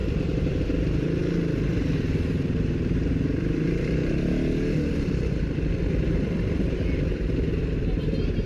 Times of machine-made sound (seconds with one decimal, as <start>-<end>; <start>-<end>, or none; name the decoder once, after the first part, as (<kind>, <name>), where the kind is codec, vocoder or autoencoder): 0.0-1.2 (vocoder, BigVGAN v2); 1.7-4.0; 4.9-8.5